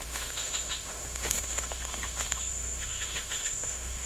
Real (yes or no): no